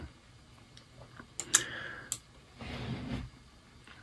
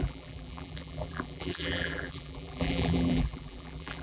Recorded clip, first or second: first